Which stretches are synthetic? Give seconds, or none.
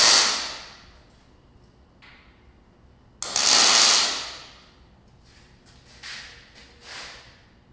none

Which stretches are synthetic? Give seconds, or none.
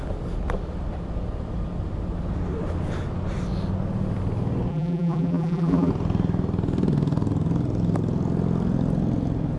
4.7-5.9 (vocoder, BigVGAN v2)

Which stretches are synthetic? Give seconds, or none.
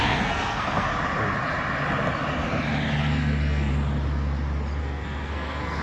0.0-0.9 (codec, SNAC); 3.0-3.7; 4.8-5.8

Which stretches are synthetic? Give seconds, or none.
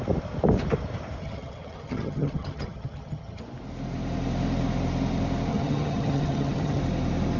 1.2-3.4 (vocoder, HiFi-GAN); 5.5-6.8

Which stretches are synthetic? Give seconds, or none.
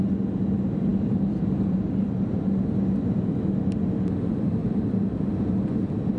0.9-1.9 (vocoder, BigVGAN v2); 4.6-5.4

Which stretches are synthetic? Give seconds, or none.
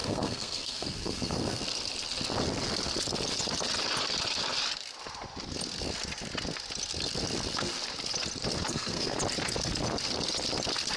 0.0-1.6 (codec, SNAC); 8.7-9.2